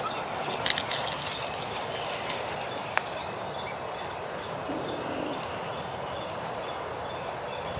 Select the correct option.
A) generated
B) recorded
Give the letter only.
B